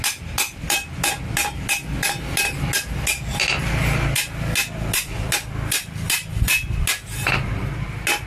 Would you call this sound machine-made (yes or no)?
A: no